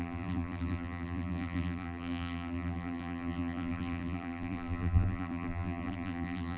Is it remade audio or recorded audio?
remade